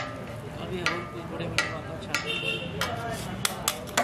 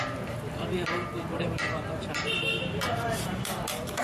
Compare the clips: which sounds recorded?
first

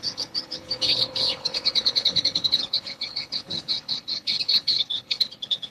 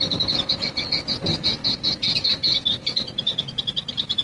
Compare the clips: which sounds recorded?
second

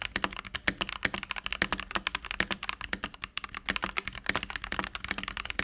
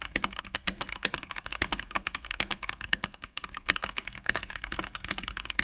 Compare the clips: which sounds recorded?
first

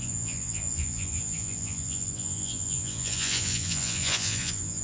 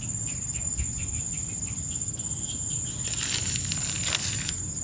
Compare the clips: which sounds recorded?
second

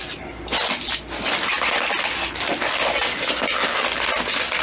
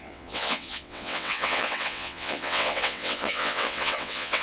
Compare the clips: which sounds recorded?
first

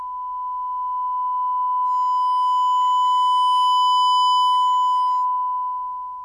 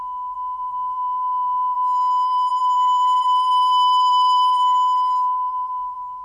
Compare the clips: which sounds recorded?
first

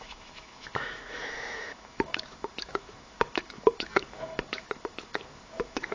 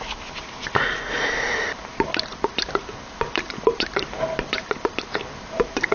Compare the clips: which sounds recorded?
second